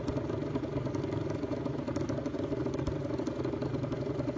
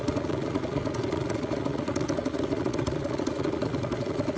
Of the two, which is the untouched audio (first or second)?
first